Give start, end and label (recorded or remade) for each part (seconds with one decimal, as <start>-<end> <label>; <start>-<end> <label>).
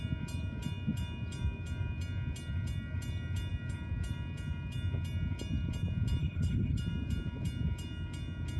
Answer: 0.0-6.2 recorded; 6.2-6.8 remade; 6.8-8.6 recorded